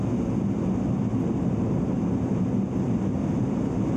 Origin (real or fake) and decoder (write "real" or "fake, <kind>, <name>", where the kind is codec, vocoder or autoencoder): real